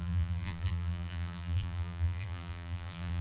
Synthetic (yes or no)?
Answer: yes